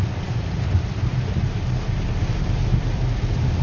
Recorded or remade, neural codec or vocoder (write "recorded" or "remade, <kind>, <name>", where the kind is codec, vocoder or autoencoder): remade, vocoder, BigVGAN v2